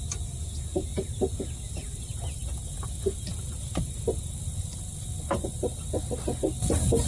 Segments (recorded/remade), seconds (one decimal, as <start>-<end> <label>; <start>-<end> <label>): 0.0-7.1 recorded